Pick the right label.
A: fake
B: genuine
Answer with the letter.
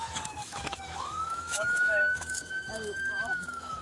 A